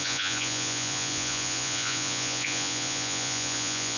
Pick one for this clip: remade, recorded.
remade